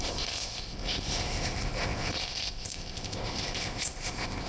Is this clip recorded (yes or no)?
no